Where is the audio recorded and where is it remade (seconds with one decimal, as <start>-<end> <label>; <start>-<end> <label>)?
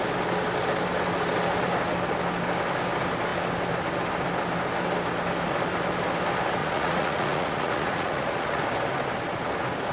0.0-6.6 recorded; 6.6-8.6 remade; 8.6-9.9 recorded